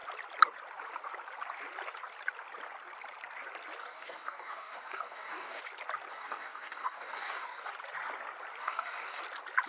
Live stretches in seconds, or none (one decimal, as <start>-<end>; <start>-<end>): 0.0-3.8; 5.6-6.1; 7.7-8.6; 9.2-9.7

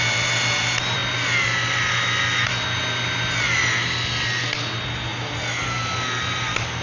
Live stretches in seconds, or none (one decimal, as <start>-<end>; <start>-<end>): 0.0-6.8

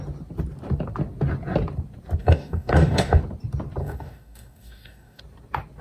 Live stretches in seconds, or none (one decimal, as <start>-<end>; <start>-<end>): 0.0-2.2; 3.2-3.8; 5.2-5.8

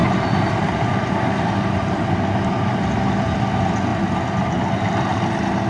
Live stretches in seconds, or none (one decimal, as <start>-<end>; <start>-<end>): 0.0-5.7